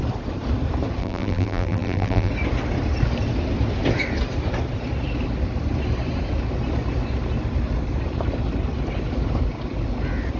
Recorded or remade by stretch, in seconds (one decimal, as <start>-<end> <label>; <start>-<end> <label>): 0.0-1.0 recorded; 1.0-2.3 remade; 2.3-10.4 recorded